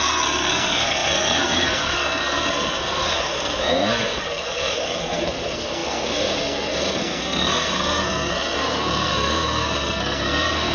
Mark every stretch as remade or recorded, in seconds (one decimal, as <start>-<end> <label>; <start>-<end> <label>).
0.0-10.7 remade